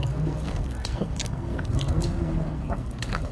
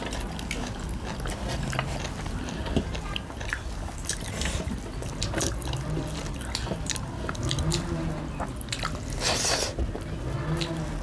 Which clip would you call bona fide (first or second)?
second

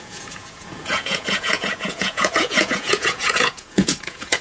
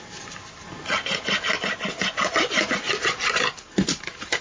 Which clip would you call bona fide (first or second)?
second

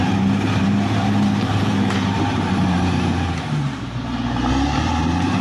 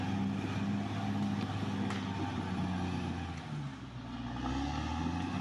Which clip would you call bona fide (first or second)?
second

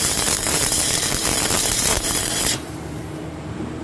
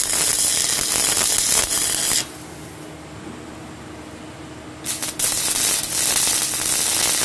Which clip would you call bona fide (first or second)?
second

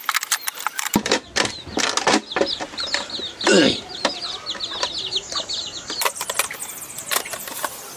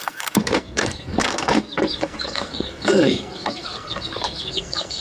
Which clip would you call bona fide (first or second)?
first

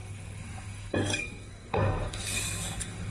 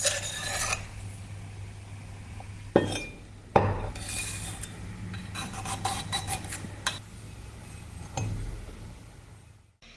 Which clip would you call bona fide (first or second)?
second